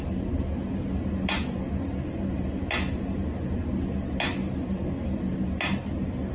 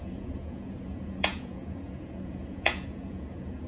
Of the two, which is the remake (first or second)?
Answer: second